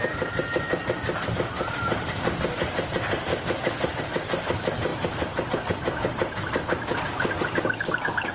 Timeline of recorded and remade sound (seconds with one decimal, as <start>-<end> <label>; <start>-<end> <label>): 0.0-3.3 recorded; 3.3-4.0 remade; 4.0-8.3 recorded